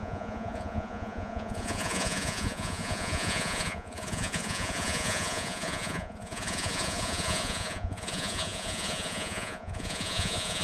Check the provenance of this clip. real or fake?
fake